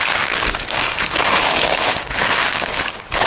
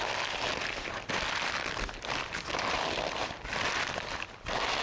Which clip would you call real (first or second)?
second